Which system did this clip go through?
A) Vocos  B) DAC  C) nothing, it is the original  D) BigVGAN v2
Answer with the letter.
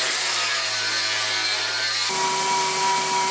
C